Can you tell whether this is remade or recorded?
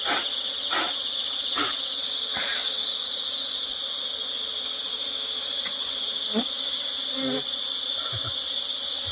recorded